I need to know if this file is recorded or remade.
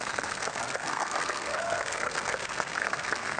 remade